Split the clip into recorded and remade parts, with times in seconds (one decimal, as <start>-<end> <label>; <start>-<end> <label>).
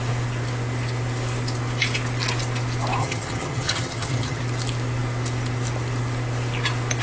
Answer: 0.0-3.0 recorded; 3.0-4.4 remade; 4.4-7.0 recorded